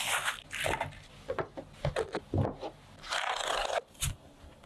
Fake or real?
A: real